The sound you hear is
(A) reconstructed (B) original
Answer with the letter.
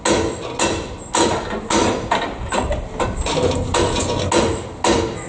B